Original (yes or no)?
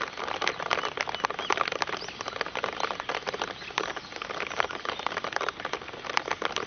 yes